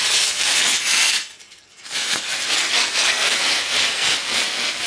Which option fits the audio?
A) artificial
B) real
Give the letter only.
A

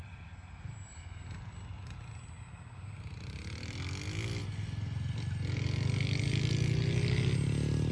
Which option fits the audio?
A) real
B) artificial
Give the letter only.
A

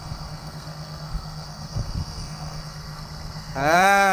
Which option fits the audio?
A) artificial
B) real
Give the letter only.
A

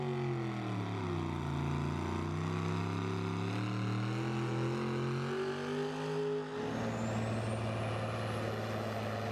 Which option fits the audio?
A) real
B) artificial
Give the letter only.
A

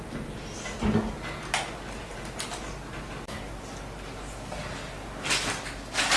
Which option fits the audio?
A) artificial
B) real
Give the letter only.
B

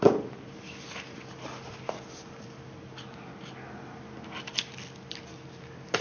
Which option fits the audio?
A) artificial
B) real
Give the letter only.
B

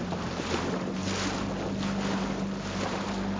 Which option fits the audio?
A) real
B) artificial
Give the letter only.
A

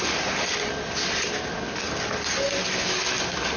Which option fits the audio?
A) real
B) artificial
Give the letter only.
A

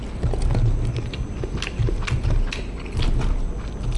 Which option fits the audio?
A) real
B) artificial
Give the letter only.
A